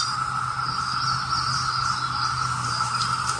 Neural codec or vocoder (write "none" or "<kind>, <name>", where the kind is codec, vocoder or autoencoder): none